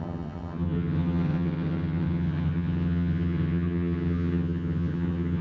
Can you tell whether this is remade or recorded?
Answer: remade